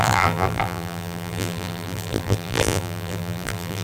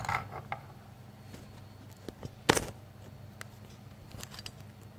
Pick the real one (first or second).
second